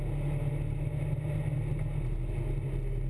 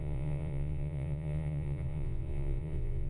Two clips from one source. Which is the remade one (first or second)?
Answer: second